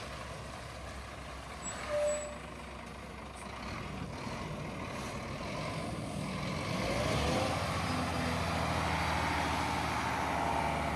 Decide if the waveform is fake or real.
real